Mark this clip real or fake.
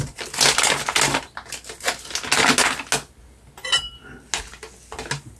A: real